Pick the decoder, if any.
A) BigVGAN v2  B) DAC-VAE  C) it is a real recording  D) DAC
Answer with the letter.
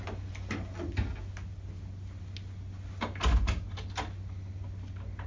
C